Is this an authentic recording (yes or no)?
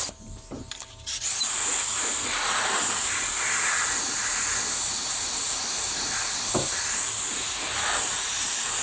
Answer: yes